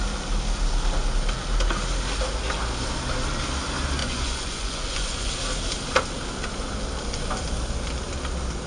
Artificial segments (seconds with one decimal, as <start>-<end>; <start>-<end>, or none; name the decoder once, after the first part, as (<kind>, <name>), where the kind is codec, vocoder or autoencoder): 4.0-5.3 (vocoder, Vocos)